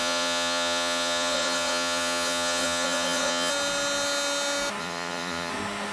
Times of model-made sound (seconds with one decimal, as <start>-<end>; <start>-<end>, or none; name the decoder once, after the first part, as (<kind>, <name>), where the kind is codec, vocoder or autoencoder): 0.0-3.5 (vocoder, Vocos); 4.8-5.5